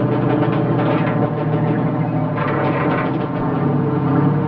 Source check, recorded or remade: recorded